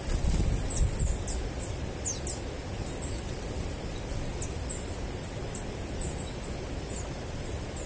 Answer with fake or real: real